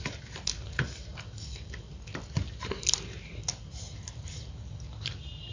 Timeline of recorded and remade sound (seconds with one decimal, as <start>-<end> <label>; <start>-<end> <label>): 0.0-5.5 recorded